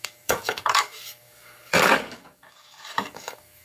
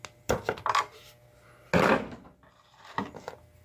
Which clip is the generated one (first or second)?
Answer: first